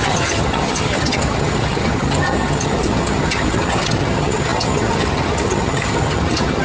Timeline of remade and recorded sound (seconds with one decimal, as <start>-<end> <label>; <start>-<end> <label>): 0.0-6.6 remade